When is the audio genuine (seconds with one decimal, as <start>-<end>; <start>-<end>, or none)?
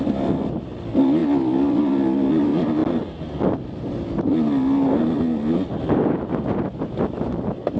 0.0-7.8